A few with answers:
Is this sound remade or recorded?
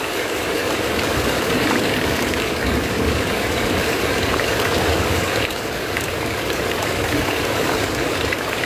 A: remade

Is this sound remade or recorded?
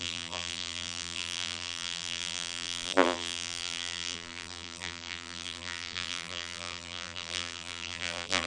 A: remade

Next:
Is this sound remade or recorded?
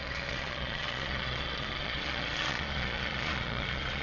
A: remade